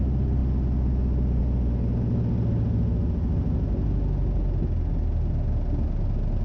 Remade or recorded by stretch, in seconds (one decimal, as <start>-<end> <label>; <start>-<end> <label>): 0.0-6.4 recorded